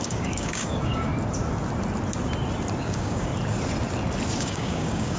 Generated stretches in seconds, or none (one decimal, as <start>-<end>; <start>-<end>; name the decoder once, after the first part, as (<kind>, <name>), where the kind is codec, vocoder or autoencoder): 0.0-1.1 (codec, DAC); 2.8-3.3; 4.4-5.2